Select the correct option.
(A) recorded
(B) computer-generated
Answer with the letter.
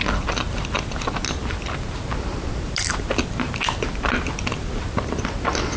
A